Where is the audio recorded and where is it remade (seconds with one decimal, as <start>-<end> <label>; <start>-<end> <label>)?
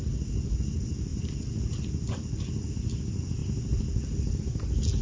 0.0-5.0 recorded